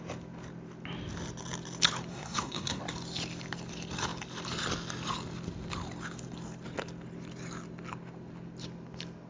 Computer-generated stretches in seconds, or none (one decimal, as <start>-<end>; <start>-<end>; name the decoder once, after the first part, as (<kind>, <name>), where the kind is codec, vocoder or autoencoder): 2.1-2.8 (codec, SNAC)